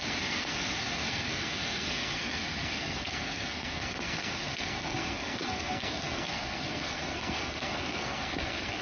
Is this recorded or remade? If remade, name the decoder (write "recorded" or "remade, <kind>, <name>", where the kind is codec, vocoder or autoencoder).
remade, codec, SNAC